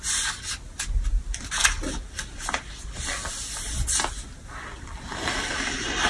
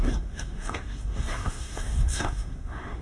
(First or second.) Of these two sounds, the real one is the first